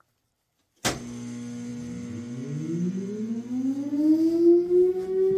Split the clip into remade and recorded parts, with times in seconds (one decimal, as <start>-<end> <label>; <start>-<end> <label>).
0.0-5.4 recorded

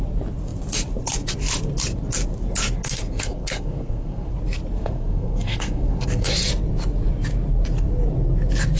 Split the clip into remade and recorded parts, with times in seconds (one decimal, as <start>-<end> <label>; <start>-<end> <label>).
0.0-2.8 recorded; 2.8-4.3 remade; 4.3-4.8 recorded; 4.8-6.3 remade; 6.3-8.8 recorded

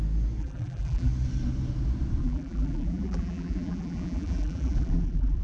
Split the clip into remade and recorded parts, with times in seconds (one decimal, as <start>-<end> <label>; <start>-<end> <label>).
0.0-0.4 recorded; 0.4-1.1 remade; 1.1-2.2 recorded; 2.2-5.4 remade

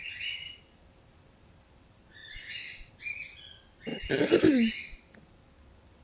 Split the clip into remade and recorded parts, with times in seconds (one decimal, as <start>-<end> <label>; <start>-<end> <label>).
0.0-2.2 recorded; 2.2-2.9 remade; 2.9-3.9 recorded; 3.9-5.3 remade; 5.3-6.0 recorded

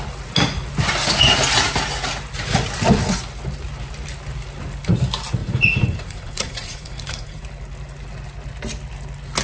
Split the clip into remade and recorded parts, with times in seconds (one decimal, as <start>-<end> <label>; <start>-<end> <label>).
0.0-5.4 recorded; 5.4-7.4 remade; 7.4-9.4 recorded